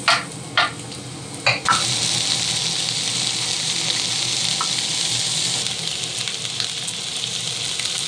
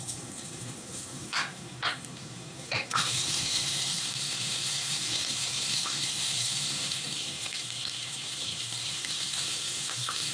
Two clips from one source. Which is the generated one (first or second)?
second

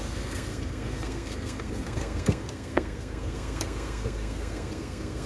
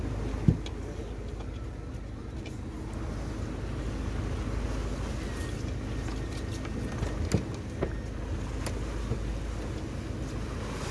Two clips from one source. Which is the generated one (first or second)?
first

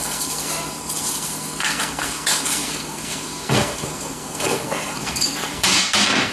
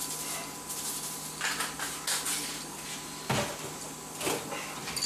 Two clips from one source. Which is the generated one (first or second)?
first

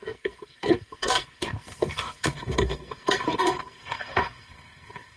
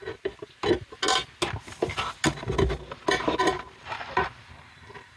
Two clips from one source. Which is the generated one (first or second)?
first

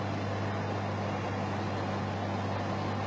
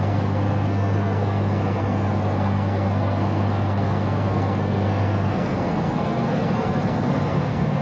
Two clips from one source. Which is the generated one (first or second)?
second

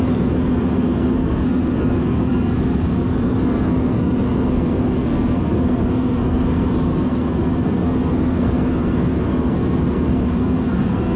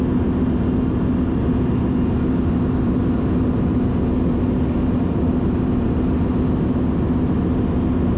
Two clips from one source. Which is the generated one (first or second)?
first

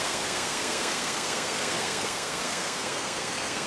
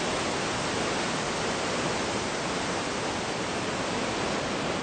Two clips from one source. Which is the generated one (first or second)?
first